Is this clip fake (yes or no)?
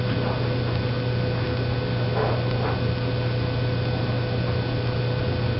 no